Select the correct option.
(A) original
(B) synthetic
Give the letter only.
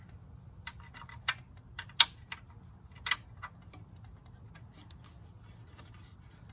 A